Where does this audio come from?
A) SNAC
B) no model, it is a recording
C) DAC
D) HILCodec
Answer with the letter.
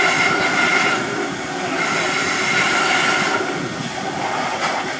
B